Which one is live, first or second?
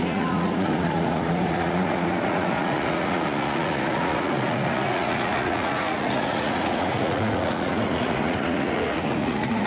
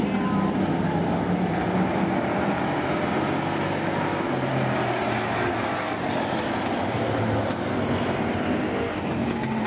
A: second